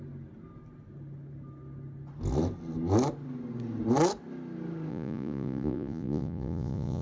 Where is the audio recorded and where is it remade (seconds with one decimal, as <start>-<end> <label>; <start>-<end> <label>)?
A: 0.0-4.9 recorded; 4.9-7.0 remade

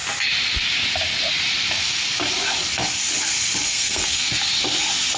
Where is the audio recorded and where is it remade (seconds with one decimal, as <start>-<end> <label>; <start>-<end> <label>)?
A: 0.0-3.6 recorded; 3.6-4.3 remade; 4.3-5.2 recorded

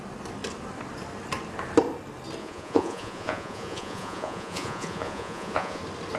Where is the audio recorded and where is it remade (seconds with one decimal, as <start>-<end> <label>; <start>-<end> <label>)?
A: 0.0-2.4 recorded; 2.4-5.8 remade; 5.8-6.2 recorded

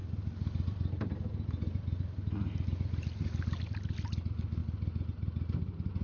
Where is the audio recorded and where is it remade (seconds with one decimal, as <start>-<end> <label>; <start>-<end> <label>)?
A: 0.0-6.0 recorded

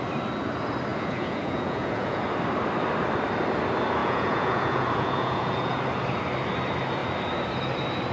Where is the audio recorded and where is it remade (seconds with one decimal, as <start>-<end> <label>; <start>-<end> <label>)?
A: 0.0-0.9 recorded; 0.9-2.2 remade; 2.2-4.0 recorded; 4.0-5.8 remade; 5.8-8.1 recorded

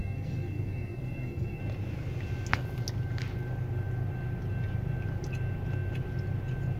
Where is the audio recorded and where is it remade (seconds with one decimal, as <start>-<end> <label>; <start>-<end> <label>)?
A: 0.0-1.6 remade; 1.6-6.8 recorded

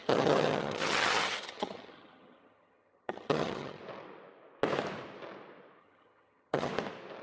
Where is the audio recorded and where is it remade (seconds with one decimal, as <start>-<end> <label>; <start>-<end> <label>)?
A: 0.0-3.8 remade; 3.8-5.8 recorded; 5.8-6.7 remade; 6.7-7.2 recorded